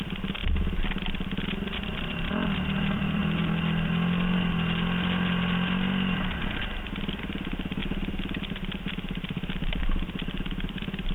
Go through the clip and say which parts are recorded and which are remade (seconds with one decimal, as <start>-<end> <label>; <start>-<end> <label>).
0.0-3.2 remade; 3.2-6.6 recorded; 6.6-7.8 remade; 7.8-8.5 recorded; 8.5-11.1 remade